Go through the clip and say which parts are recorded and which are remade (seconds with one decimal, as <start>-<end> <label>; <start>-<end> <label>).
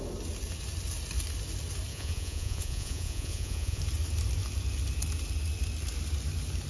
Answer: 0.0-1.9 recorded; 1.9-3.8 remade; 3.8-6.7 recorded